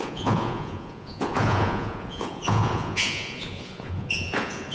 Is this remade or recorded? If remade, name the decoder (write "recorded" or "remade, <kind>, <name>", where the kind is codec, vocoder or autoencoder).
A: remade, vocoder, Vocos